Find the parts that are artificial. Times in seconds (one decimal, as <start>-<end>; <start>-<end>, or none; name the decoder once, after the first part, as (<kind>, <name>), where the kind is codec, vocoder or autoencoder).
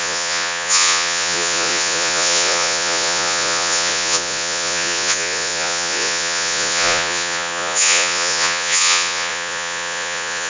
0.0-10.5 (vocoder, Vocos)